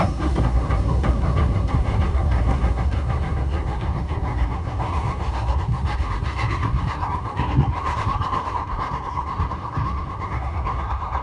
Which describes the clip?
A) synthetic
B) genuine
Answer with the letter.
A